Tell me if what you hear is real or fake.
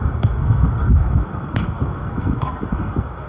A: fake